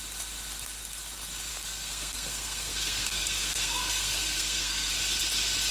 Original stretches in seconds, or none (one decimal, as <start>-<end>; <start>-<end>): 0.0-1.5; 4.9-5.7